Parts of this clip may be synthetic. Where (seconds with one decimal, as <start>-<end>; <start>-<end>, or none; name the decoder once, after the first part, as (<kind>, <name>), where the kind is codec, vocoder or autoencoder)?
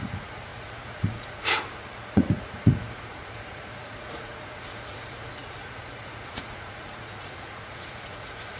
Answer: 0.0-8.6 (vocoder, Vocos)